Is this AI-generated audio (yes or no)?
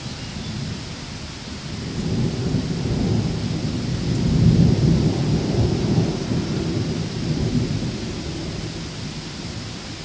no